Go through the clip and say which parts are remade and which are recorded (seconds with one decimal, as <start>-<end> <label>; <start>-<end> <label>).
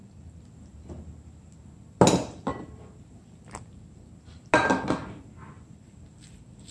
0.0-6.7 recorded